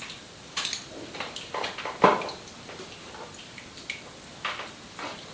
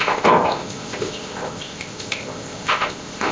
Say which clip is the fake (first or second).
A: second